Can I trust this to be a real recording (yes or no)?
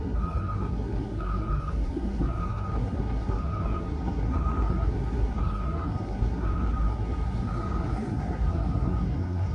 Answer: no